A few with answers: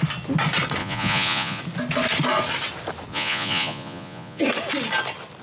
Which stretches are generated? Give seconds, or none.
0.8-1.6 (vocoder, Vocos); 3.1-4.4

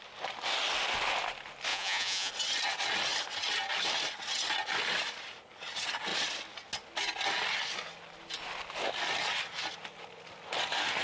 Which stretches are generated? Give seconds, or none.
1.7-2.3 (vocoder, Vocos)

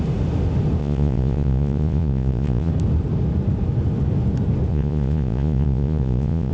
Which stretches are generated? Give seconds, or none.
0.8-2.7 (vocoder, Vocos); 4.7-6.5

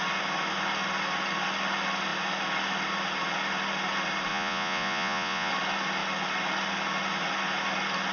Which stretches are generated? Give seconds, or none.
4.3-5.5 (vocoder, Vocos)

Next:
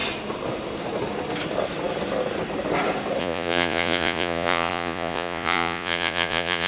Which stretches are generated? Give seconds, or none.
3.2-6.7 (vocoder, Vocos)